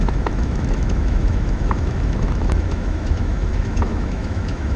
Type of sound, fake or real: fake